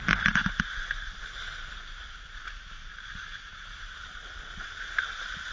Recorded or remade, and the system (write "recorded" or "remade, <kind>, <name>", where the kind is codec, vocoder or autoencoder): recorded